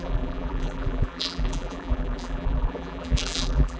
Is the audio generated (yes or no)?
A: yes